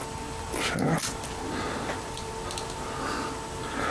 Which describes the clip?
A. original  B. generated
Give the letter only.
A